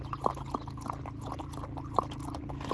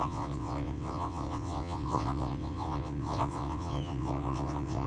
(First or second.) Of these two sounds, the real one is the first